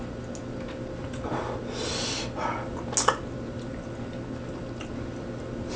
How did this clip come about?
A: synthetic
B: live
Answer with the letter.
B